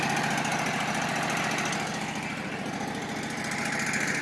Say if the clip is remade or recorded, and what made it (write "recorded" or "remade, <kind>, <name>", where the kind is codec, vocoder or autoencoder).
recorded